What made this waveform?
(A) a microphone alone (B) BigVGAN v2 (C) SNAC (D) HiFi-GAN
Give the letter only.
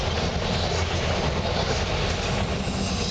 A